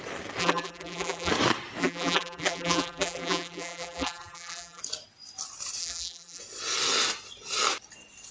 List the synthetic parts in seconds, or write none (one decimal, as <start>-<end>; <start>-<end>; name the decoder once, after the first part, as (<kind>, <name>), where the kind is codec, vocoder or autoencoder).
0.4-1.3 (vocoder, BigVGAN v2); 1.8-4.8; 5.8-6.4